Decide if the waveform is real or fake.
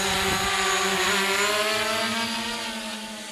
real